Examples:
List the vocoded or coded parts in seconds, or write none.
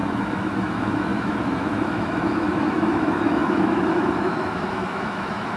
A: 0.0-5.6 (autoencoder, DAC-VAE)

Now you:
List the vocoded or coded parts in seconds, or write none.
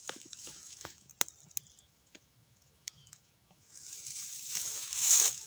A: 0.0-1.1 (autoencoder, DAC-VAE); 1.8-5.5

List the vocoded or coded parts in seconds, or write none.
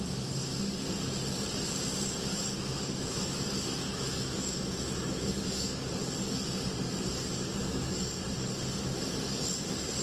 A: 2.3-5.8 (autoencoder, DAC-VAE); 7.6-8.1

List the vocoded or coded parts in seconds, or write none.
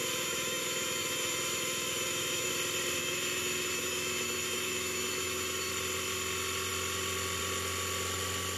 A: 0.0-2.5 (autoencoder, DAC-VAE); 3.0-5.7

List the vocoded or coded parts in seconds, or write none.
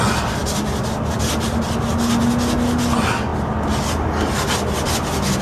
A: none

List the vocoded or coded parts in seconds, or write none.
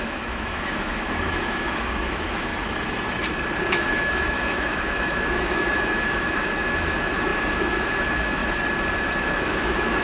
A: 0.0-2.5 (autoencoder, DAC-VAE); 3.7-8.4; 9.2-10.0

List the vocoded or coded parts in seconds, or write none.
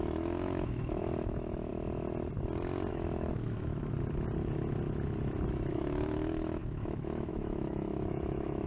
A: 0.0-1.7 (autoencoder, DAC-VAE); 2.9-3.7; 5.7-8.7